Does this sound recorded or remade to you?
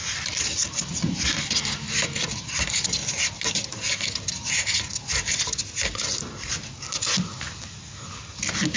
recorded